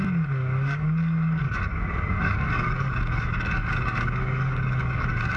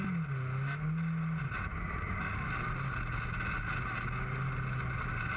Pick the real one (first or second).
second